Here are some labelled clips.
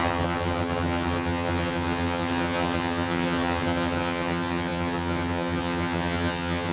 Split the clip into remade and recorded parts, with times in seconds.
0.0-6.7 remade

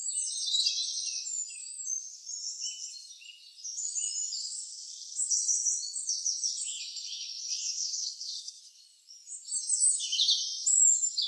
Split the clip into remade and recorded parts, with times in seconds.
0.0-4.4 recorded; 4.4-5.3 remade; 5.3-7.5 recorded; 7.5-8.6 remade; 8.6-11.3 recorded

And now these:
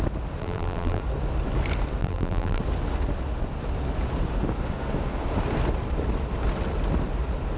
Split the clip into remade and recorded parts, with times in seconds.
0.0-0.4 recorded; 0.4-1.0 remade; 1.0-2.0 recorded; 2.0-2.6 remade; 2.6-7.6 recorded

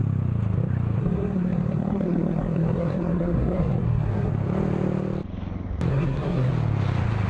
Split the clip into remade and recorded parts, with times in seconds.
0.0-1.0 recorded; 1.0-4.3 remade; 4.3-5.9 recorded; 5.9-6.5 remade; 6.5-7.3 recorded